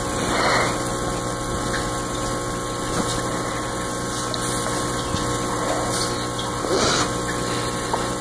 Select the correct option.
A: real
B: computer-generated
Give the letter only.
A